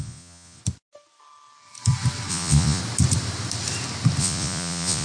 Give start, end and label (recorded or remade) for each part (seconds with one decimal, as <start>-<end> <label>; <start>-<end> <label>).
0.0-0.6 remade; 0.6-2.3 recorded; 2.3-2.8 remade; 2.8-4.2 recorded; 4.2-5.0 remade